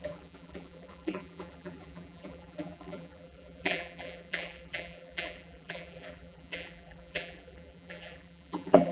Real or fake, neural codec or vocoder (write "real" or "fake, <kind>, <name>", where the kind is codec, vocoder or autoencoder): fake, vocoder, BigVGAN v2